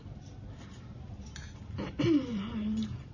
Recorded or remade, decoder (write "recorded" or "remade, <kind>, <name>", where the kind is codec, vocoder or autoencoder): remade, vocoder, BigVGAN v2